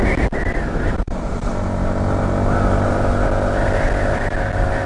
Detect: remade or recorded recorded